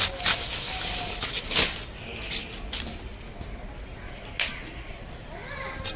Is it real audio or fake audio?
real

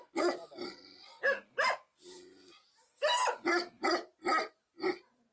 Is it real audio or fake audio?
real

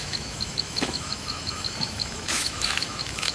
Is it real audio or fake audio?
fake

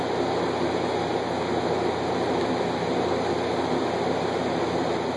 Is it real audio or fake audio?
real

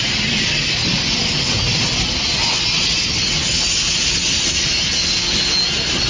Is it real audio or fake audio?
real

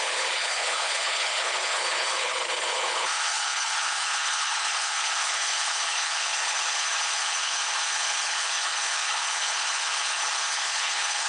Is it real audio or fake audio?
fake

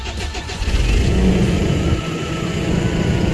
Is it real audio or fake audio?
fake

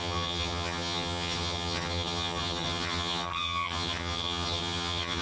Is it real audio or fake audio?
fake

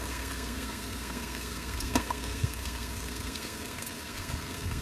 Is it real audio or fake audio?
fake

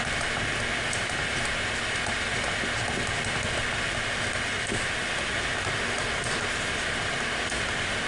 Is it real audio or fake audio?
real